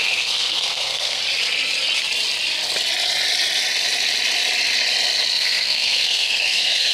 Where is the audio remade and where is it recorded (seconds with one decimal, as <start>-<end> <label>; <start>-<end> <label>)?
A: 0.0-1.2 remade; 1.2-5.3 recorded; 5.3-6.9 remade